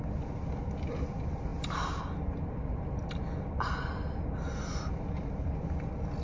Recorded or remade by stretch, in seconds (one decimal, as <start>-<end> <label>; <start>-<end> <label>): 0.0-6.2 recorded

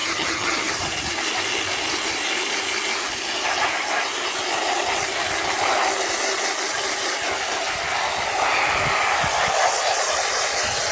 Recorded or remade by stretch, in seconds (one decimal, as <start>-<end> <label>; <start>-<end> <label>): 0.0-0.7 remade; 0.7-10.9 recorded

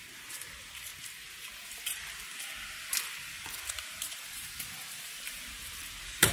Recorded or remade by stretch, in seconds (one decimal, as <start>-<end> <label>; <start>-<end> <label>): 0.0-0.9 remade; 0.9-3.6 recorded; 3.6-6.3 remade

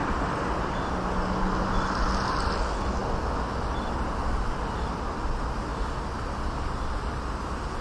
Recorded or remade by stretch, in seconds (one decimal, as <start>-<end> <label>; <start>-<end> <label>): 0.0-7.8 recorded

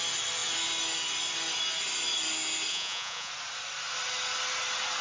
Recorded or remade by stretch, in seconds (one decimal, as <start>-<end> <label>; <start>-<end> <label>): 0.0-2.7 recorded; 2.7-3.3 remade; 3.3-5.0 recorded

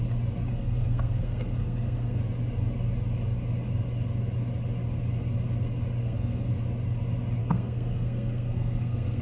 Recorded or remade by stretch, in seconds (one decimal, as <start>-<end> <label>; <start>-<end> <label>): 0.0-0.5 recorded; 0.5-2.2 remade; 2.2-6.0 recorded; 6.0-6.5 remade; 6.5-7.4 recorded; 7.4-9.2 remade

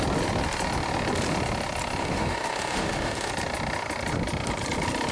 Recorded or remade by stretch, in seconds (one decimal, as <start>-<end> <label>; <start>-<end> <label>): 0.0-2.0 recorded; 2.0-3.3 remade; 3.3-5.1 recorded